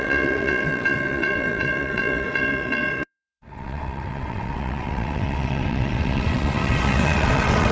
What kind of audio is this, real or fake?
fake